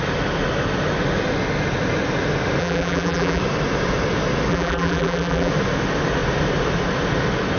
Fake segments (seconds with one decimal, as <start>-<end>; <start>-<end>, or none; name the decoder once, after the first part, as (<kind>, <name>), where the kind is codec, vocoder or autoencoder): 2.6-3.4 (vocoder, BigVGAN v2); 4.5-5.5